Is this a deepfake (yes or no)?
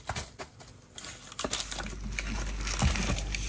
no